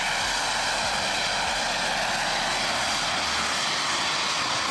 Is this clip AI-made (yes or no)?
no